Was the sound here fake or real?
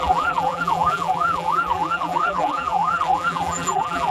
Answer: fake